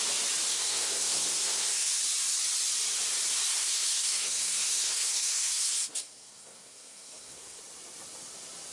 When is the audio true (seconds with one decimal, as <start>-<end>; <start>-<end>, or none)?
0.0-0.5; 2.0-3.5; 7.6-8.7